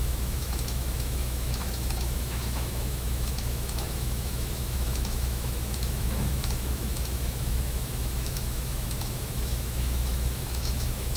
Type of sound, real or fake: fake